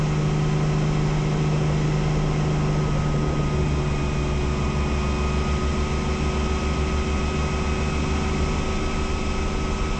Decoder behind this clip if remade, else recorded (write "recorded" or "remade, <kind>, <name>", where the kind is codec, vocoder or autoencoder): recorded